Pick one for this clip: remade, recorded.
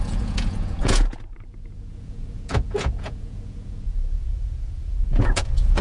remade